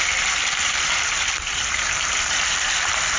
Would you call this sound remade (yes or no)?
yes